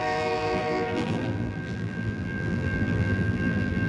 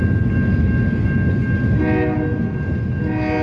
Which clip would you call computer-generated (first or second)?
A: first